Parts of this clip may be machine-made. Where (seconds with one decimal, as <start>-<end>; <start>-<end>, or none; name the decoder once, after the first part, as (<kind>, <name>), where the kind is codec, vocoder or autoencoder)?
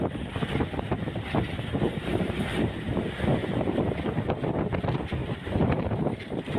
0.9-3.0 (vocoder, BigVGAN v2); 3.4-4.0; 5.2-5.8